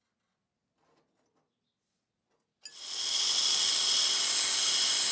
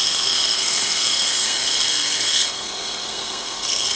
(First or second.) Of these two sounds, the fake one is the second